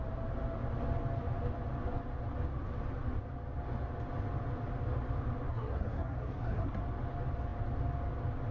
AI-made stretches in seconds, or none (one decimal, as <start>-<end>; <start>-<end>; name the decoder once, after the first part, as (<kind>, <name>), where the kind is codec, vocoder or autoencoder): 5.5-6.8 (codec, SNAC)